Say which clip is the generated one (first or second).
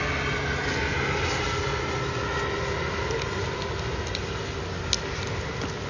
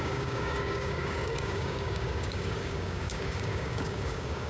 second